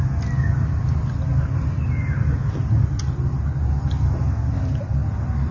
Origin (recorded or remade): recorded